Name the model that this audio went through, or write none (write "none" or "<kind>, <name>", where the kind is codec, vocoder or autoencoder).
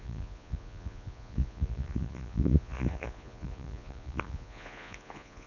vocoder, Vocos